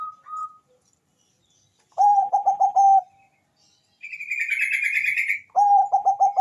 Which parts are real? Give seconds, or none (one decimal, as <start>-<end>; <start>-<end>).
0.0-0.4; 4.2-6.4